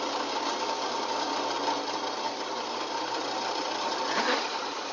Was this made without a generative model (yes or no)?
yes